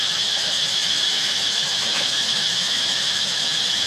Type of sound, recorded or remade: remade